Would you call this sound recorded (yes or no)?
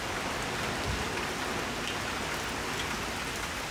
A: yes